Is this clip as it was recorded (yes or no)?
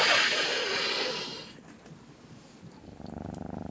yes